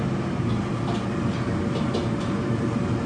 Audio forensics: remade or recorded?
recorded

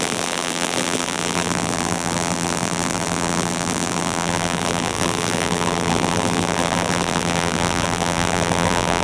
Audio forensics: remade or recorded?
remade